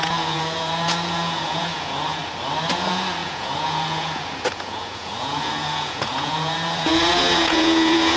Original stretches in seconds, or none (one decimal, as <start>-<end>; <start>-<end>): 2.2-2.7

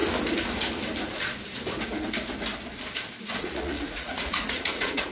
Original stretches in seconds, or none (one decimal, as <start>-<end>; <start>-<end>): 0.0-3.1

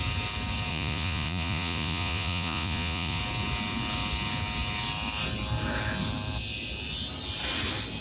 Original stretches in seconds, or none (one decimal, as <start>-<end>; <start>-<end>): 0.0-0.7; 3.2-8.0

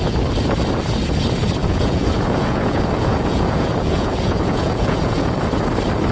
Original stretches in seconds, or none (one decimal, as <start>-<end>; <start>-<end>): 0.0-1.6; 5.3-6.1

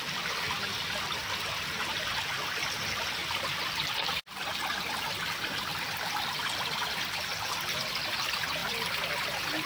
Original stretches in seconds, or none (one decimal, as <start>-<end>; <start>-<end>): 0.0-1.2; 1.9-3.2; 3.9-5.7; 6.4-8.6; 9.2-9.7

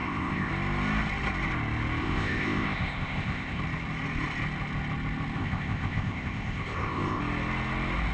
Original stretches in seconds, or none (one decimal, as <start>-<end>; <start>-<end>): 0.5-2.0; 3.6-5.4; 7.2-8.1

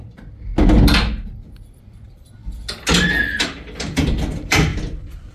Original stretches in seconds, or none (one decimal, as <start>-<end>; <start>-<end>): 0.5-1.8; 2.4-3.4; 4.7-5.3

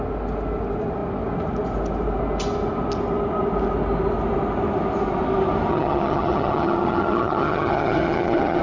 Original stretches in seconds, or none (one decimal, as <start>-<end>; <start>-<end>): 0.0-5.7